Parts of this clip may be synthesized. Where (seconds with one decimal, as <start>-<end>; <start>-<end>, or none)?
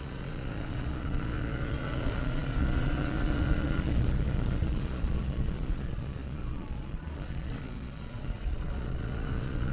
0.0-9.7